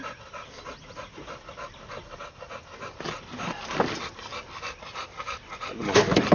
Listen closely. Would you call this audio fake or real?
real